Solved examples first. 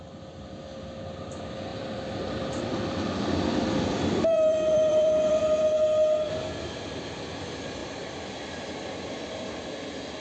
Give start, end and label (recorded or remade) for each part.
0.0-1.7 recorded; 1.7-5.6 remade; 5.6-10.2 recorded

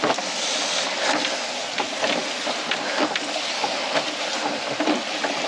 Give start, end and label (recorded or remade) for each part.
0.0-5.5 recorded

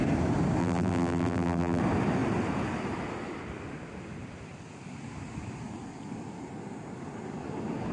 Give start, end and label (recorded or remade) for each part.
0.0-0.6 recorded; 0.6-1.8 remade; 1.8-7.9 recorded

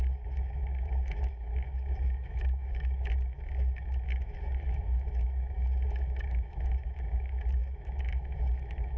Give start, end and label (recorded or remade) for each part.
0.0-9.0 remade